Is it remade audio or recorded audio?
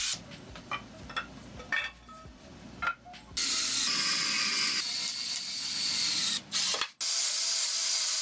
recorded